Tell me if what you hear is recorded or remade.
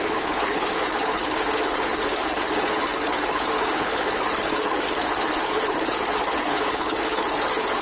remade